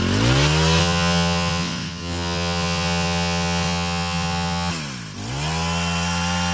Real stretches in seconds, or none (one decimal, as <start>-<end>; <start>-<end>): 0.0-0.8; 4.7-6.5